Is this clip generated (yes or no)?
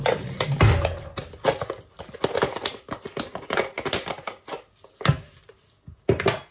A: no